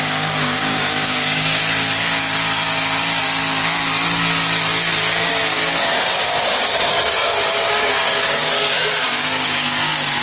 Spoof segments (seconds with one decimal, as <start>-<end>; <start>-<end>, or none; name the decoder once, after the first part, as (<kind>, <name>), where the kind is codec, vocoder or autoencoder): 0.0-1.6 (codec, DAC); 5.3-10.2